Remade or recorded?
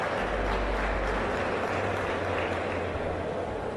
recorded